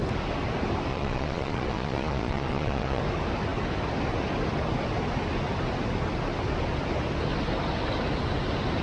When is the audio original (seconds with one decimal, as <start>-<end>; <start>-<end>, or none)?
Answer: 0.0-0.9; 3.0-8.8